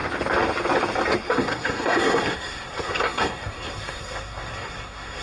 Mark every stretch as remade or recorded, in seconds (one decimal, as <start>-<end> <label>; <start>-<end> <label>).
0.0-1.3 recorded; 1.3-5.2 remade